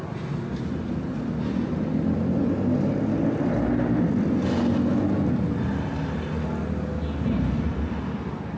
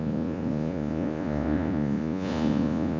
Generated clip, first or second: second